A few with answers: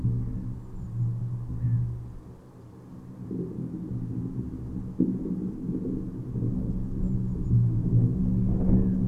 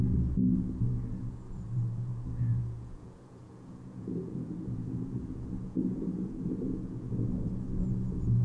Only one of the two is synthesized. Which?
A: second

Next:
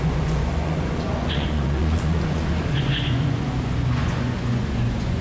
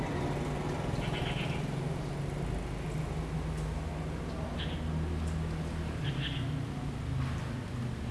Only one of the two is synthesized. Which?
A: first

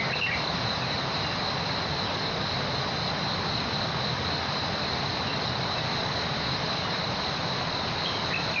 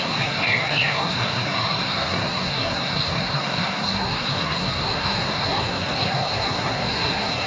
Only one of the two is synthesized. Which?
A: second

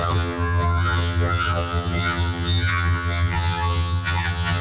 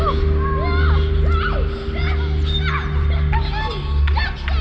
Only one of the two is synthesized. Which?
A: first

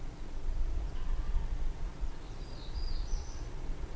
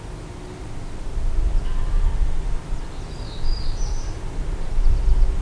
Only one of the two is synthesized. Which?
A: first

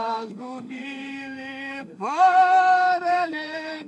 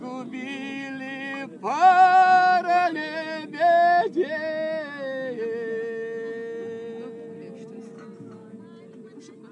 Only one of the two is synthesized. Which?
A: first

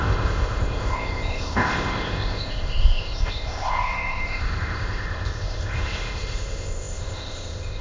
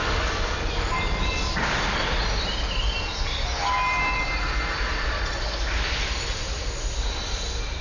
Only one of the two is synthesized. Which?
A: first